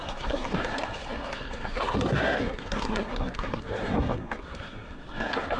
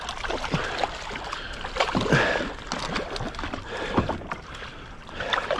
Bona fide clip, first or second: second